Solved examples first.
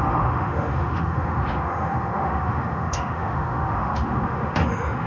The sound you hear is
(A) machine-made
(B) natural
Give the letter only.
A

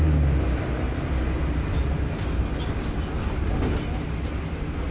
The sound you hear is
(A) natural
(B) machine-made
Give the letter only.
A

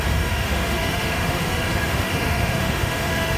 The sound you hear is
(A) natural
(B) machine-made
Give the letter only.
B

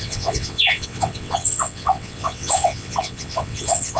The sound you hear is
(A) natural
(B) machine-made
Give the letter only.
B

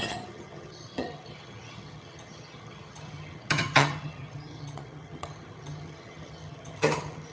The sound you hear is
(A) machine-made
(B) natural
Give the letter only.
A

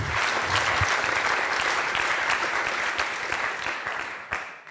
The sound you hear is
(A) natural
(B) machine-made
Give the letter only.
A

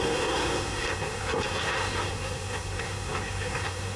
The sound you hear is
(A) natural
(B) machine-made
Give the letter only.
B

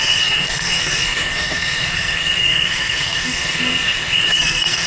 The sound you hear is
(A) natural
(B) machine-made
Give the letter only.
B